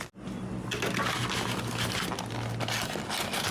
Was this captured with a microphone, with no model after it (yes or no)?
yes